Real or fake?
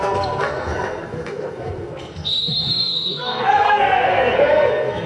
fake